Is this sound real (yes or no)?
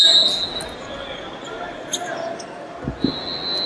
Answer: yes